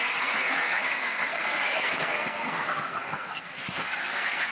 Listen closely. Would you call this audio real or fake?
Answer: fake